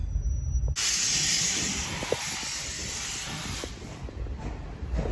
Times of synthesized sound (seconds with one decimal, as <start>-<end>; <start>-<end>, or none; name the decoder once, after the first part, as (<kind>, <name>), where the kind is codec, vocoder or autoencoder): 1.0-4.0 (vocoder, BigVGAN v2)